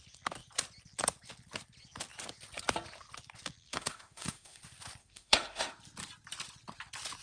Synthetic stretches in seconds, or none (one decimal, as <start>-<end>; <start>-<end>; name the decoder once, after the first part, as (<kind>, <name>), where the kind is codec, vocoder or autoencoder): 3.7-4.6 (autoencoder, DAC-VAE); 5.0-5.8